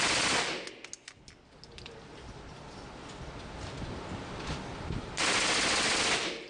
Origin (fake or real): real